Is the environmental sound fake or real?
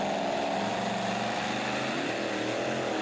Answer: real